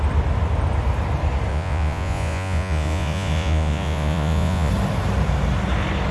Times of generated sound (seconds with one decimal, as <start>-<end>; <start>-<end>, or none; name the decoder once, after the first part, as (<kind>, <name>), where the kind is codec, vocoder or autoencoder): 1.5-4.7 (vocoder, Vocos)